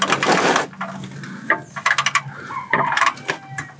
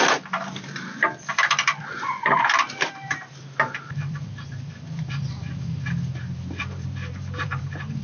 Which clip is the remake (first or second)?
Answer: second